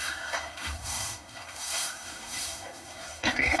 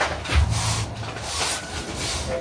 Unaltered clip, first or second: second